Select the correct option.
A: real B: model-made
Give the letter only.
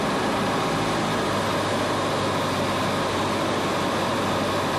A